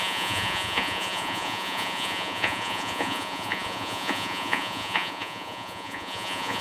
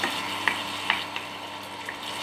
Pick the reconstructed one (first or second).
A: first